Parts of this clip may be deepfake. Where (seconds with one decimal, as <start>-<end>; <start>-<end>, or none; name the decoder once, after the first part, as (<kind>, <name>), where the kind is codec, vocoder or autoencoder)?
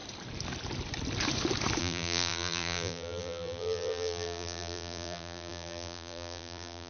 1.8-6.9 (vocoder, BigVGAN v2)